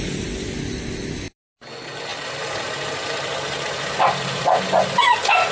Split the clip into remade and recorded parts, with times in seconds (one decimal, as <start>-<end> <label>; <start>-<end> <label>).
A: 0.0-5.5 recorded